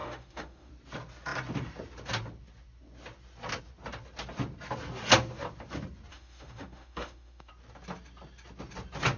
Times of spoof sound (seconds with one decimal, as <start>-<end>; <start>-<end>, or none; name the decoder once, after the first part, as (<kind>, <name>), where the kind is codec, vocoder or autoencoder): 0.0-0.7 (autoencoder, DAC-VAE); 6.1-7.5